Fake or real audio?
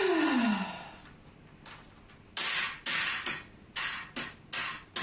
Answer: real